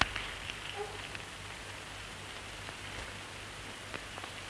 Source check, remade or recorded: recorded